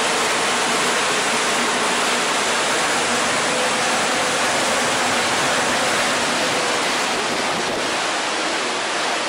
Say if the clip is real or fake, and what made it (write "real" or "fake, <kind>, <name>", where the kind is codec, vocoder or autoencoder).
real